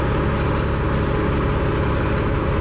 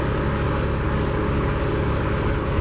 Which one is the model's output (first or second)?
second